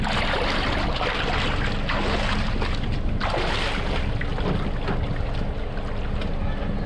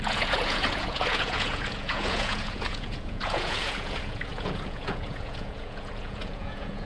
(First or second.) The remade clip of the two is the second